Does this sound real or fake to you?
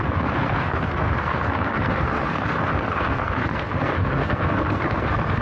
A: fake